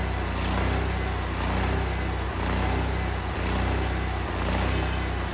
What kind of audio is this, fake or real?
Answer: real